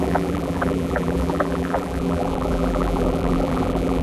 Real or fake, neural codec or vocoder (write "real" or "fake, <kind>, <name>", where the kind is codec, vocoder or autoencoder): fake, vocoder, BigVGAN v2